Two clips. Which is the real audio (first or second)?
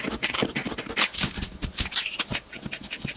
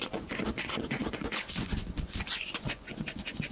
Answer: first